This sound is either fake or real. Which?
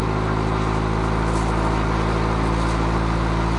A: real